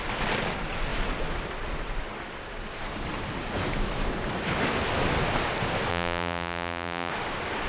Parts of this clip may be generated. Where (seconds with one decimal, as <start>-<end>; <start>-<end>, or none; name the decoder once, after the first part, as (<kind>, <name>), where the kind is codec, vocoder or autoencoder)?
5.9-7.1 (vocoder, BigVGAN v2)